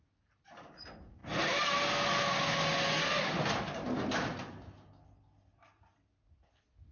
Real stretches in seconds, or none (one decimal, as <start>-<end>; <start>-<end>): 0.0-6.9